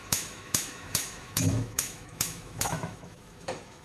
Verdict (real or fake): fake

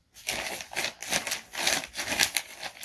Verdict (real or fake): real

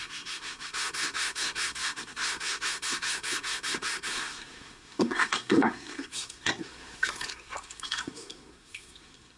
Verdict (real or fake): fake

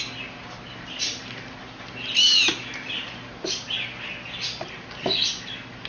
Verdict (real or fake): real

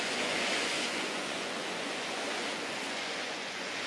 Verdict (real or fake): fake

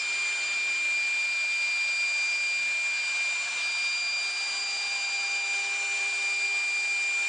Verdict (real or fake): real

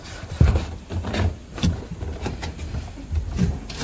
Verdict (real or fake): real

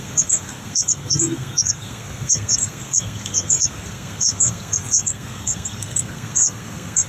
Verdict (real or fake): fake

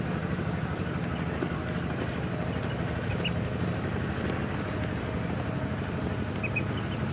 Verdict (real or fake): real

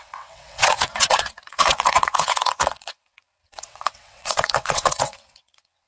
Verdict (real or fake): fake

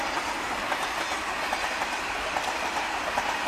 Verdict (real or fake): fake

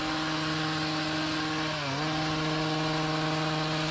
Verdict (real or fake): real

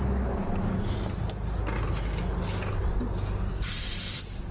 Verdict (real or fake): real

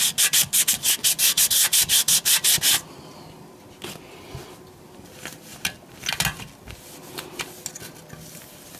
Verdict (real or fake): real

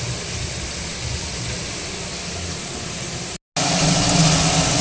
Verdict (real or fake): real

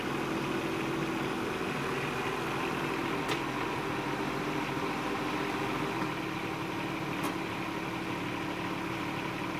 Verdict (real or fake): real